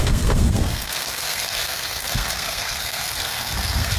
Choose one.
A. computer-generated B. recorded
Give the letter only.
A